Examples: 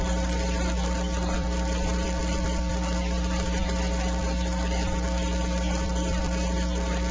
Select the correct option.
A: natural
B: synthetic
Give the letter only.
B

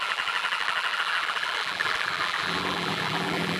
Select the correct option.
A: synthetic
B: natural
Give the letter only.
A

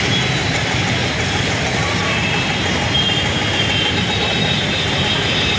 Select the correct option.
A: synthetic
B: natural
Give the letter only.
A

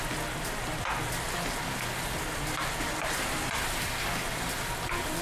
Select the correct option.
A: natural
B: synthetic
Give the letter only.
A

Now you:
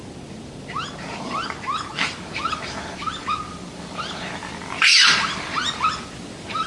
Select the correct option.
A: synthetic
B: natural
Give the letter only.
A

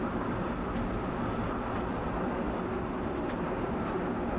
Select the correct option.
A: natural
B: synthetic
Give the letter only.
A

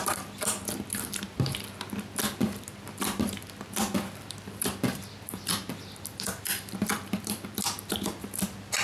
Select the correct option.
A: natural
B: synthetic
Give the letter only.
B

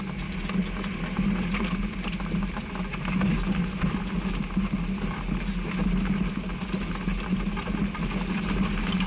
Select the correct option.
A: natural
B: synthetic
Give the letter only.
A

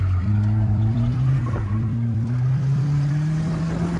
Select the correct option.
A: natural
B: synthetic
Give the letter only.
B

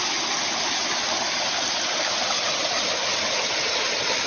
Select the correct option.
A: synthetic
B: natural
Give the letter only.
B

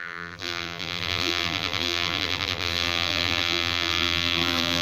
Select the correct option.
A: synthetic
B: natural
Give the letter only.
A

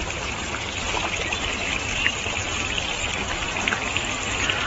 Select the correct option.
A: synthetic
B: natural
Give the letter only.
B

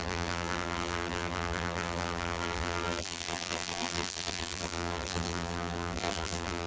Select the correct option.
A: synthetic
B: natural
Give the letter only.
A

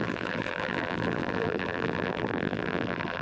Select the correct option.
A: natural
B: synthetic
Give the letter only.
B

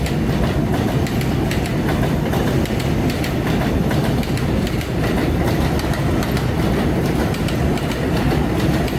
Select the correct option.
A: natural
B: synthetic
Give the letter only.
A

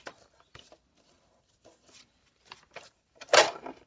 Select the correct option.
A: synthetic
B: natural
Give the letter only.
A